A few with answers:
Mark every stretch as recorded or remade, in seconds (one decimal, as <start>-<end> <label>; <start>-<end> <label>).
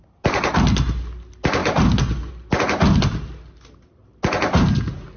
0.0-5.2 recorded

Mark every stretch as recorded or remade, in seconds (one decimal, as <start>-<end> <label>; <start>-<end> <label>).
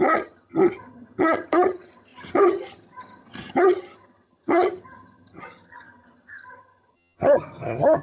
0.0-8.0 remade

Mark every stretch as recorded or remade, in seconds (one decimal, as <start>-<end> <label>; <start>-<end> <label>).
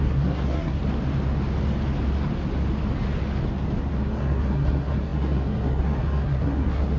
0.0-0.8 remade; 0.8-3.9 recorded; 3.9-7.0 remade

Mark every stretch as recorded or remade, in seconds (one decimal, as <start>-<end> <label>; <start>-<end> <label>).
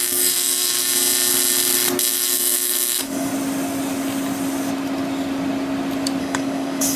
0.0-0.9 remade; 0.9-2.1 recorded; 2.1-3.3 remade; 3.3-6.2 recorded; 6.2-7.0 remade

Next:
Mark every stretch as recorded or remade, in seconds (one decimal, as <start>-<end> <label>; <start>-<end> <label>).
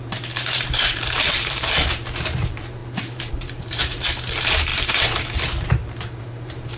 0.0-6.8 remade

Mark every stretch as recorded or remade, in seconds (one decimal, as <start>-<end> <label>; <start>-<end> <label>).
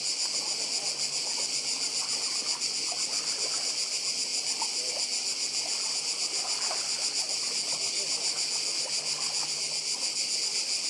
0.0-10.9 recorded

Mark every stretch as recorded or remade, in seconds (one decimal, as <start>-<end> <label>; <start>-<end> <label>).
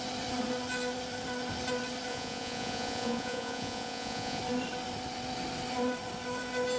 0.0-2.1 recorded; 2.1-4.4 remade; 4.4-6.8 recorded